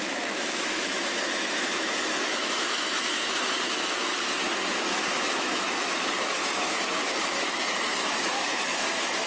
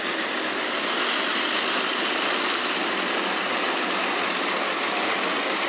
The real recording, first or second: second